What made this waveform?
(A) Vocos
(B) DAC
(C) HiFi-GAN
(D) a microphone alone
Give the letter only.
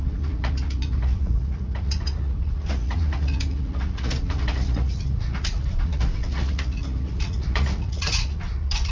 A